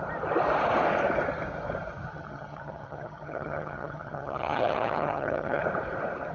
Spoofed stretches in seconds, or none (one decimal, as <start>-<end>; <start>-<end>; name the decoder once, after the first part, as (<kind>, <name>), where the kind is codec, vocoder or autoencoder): 2.1-5.6 (vocoder, HiFi-GAN)